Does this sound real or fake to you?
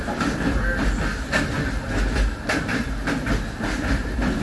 real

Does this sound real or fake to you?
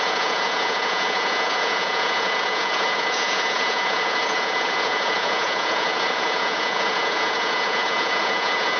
fake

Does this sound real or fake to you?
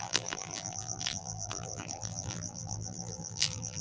fake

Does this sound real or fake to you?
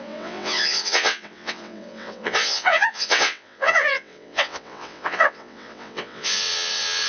fake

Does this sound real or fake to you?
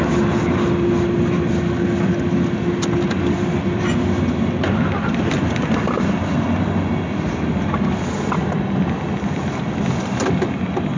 real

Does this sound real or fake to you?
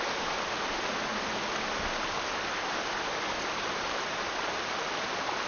real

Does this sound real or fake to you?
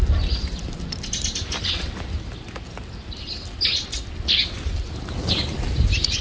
real